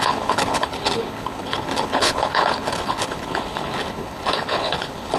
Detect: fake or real fake